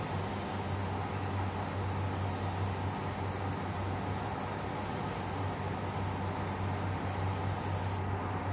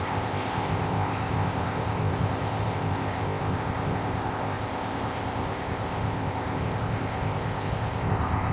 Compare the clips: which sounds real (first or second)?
first